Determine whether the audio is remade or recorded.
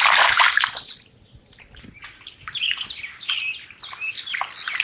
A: recorded